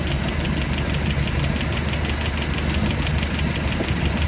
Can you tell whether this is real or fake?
real